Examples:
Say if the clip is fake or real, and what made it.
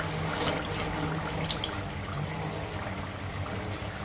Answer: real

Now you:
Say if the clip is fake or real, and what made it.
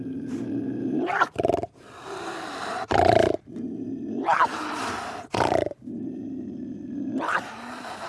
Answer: fake, vocoder, BigVGAN v2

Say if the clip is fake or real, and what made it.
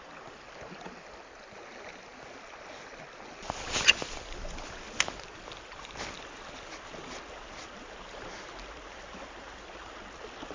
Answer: real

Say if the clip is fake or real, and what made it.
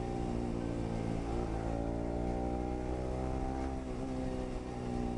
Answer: real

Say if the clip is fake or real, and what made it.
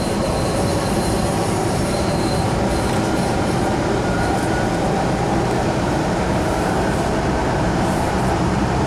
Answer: fake, vocoder, BigVGAN v2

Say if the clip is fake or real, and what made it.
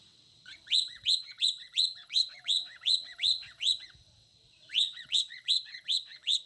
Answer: fake, vocoder, WaveNeXt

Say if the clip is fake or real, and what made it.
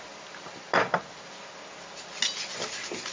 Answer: real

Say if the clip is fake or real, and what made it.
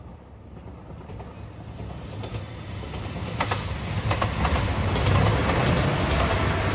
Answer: real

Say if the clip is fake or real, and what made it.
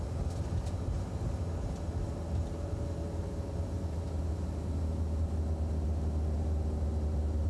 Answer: real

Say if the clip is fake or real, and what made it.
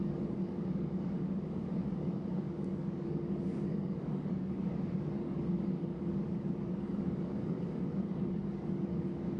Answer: fake, codec, DAC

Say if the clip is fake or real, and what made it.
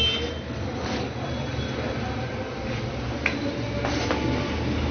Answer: real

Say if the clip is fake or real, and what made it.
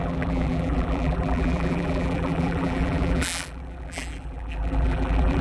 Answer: fake, vocoder, BigVGAN v2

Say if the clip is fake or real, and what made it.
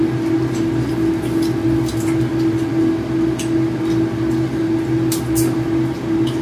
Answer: real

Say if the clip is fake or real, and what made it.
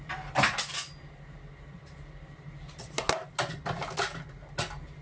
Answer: real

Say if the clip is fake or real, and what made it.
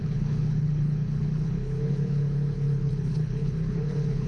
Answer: fake, codec, HILCodec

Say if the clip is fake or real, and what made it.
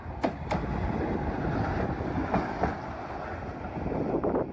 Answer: real